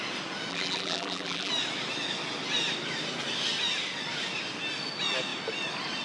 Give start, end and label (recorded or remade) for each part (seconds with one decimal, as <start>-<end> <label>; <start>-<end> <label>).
0.0-0.5 recorded; 0.5-1.5 remade; 1.5-6.0 recorded